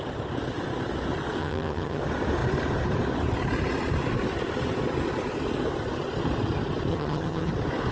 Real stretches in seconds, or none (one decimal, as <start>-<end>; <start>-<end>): 0.0-1.4; 2.0-6.9; 7.5-7.9